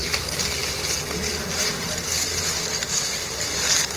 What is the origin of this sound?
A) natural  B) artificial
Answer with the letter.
A